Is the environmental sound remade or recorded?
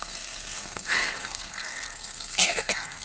remade